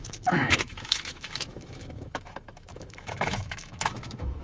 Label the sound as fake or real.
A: fake